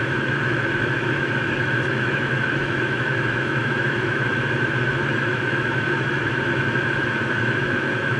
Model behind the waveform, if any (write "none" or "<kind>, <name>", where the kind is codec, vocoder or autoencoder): autoencoder, DAC-VAE